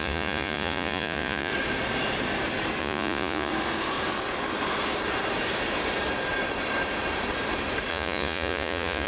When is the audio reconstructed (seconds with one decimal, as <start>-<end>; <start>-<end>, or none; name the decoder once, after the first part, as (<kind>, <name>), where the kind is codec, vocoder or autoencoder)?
0.0-1.5 (vocoder, Vocos); 2.8-3.5; 7.9-9.1